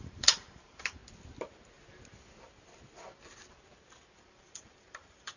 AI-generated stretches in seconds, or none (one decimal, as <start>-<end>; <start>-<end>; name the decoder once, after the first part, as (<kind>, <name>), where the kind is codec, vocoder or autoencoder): 0.0-1.0 (vocoder, BigVGAN v2); 4.2-5.4